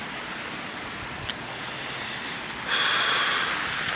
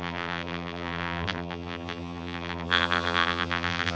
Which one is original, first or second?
first